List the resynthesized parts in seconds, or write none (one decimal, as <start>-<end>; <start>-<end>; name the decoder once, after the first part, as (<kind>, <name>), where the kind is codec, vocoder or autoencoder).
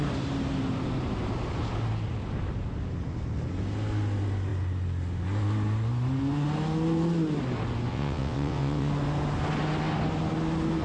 7.9-8.9 (vocoder, WaveNeXt)